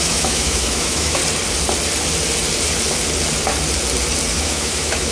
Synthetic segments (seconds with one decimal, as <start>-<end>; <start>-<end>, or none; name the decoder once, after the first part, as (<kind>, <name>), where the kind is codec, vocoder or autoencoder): 0.0-1.2 (autoencoder, DAC-VAE); 4.3-5.1